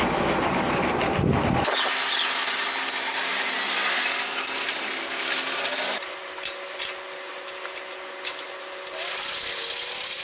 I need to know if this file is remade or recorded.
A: recorded